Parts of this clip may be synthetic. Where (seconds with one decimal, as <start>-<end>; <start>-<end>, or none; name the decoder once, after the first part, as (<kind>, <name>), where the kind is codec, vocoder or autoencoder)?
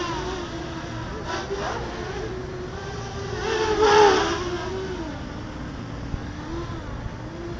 none